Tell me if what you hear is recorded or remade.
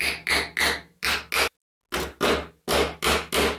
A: recorded